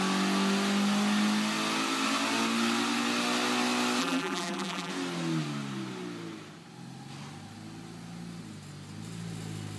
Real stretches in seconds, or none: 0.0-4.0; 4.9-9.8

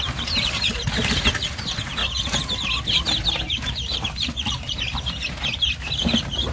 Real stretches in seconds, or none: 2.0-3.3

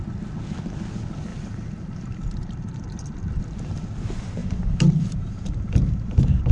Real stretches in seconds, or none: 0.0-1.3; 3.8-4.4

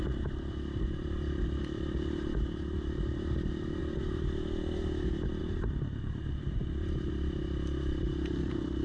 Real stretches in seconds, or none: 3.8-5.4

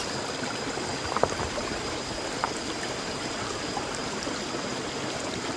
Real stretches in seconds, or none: 0.0-0.9; 4.3-4.7

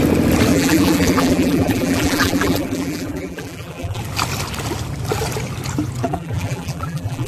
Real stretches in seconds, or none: 0.0-0.5; 4.0-6.0

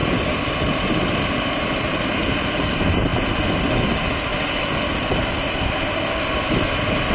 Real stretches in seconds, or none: 0.0-2.2; 2.7-7.1